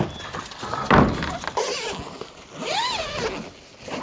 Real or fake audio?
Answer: real